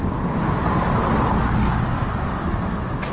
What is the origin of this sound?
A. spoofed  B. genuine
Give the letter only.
B